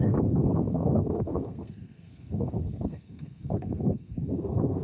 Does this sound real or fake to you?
fake